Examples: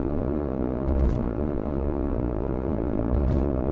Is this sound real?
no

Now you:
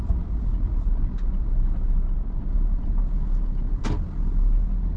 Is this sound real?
yes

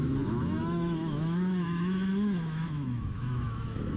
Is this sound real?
no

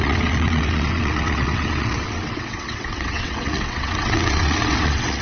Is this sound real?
no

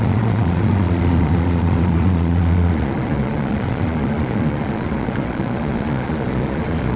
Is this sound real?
no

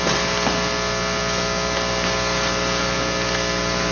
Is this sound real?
yes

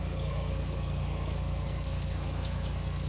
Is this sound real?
no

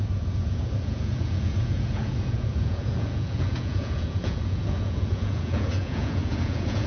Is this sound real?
no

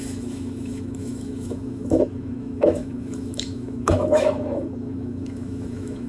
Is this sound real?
no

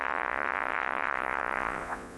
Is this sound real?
no